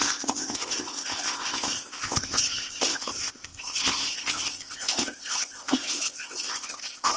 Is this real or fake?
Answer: fake